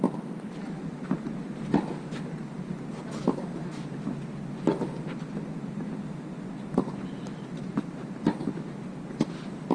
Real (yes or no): yes